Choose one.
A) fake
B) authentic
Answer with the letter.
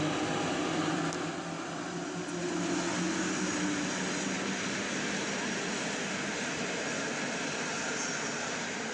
B